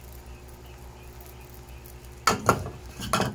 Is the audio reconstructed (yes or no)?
no